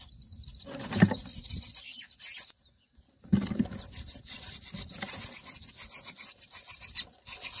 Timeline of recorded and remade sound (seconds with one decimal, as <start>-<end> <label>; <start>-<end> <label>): 0.0-7.6 recorded